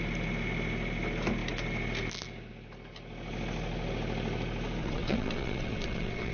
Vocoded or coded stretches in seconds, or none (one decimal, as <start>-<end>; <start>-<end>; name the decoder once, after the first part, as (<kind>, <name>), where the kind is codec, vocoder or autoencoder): 4.8-6.3 (vocoder, WaveNeXt)